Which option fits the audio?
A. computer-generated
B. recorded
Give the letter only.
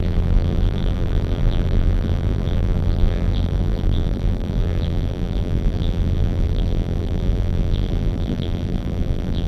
A